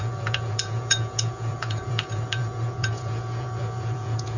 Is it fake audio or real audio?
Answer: fake